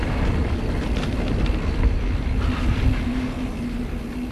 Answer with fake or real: real